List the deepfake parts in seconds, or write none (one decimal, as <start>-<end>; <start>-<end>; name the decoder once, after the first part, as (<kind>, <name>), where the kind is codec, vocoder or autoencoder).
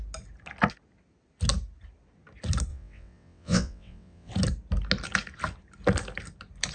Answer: 2.7-4.3 (vocoder, WaveNeXt)